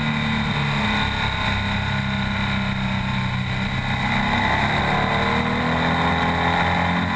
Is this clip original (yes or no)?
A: yes